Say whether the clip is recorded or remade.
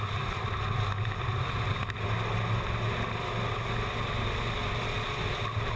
recorded